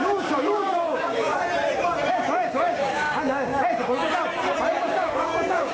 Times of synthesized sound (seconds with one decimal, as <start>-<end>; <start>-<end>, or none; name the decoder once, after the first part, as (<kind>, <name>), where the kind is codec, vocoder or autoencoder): 0.0-1.3 (codec, DAC); 2.1-3.5; 4.8-5.7